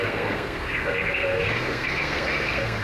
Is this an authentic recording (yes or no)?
no